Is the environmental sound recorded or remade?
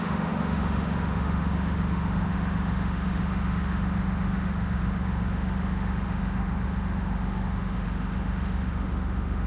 remade